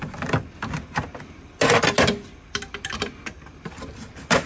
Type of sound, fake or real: real